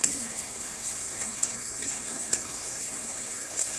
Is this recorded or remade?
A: remade